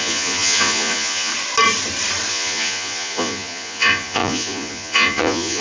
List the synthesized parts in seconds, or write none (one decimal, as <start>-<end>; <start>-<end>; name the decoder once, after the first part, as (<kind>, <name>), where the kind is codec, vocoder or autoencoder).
0.0-1.3 (vocoder, Vocos); 2.3-5.6